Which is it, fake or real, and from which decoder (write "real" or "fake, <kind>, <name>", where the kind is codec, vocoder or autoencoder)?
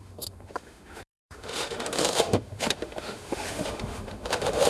fake, autoencoder, DAC-VAE